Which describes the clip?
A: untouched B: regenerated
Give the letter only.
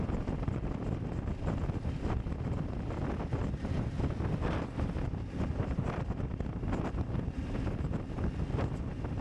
A